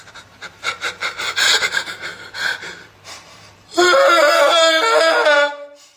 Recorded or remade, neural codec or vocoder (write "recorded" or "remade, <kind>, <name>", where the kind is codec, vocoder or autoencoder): remade, vocoder, BigVGAN v2